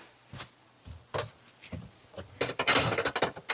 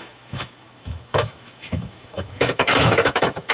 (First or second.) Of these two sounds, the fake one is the second